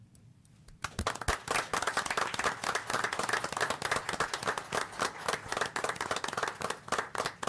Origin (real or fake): real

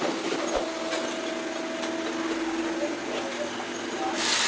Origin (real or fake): real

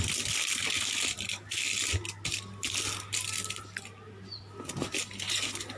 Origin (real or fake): real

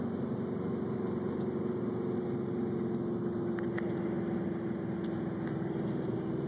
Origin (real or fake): real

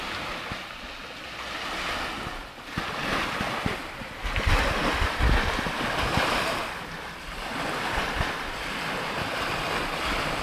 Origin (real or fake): real